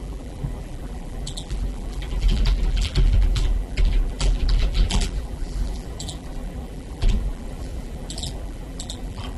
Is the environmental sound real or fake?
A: fake